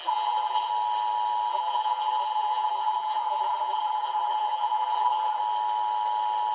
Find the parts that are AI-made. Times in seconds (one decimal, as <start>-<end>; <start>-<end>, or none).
0.0-0.7; 1.5-5.4